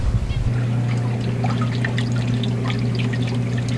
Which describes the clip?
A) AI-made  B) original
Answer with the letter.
B